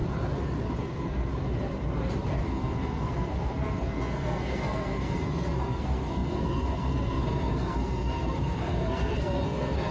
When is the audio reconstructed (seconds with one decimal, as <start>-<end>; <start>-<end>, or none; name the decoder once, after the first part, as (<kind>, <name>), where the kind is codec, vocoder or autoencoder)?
0.8-1.3 (codec, SNAC); 2.4-9.9